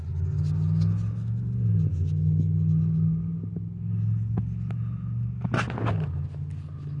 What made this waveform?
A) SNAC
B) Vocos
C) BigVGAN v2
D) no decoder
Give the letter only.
D